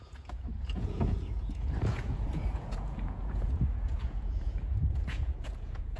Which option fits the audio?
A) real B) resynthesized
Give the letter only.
B